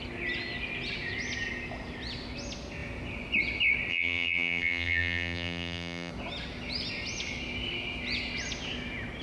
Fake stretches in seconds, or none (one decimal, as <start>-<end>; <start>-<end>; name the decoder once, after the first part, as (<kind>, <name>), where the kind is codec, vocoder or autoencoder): 3.9-6.1 (vocoder, BigVGAN v2)